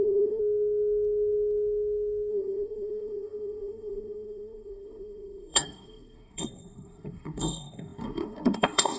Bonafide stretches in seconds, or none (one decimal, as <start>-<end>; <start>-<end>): 0.4-2.3